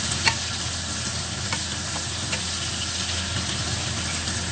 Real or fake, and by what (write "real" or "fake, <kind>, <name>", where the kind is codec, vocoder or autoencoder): real